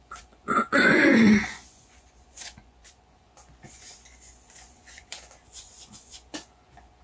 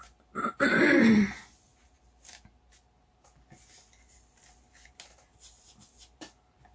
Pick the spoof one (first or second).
first